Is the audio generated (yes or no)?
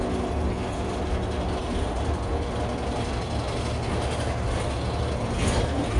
no